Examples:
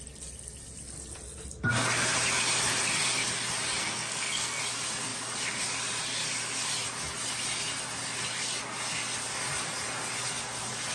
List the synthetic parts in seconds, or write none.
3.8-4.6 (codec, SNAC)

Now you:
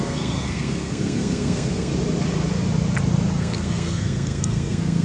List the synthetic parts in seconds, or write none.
0.0-1.9 (codec, SNAC); 3.4-5.0

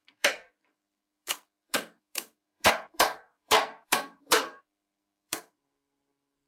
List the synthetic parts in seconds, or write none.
0.0-6.5 (codec, SNAC)

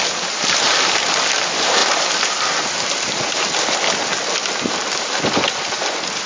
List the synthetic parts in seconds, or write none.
none